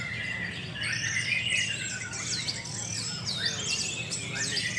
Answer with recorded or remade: recorded